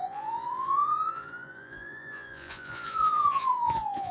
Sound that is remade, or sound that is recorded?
remade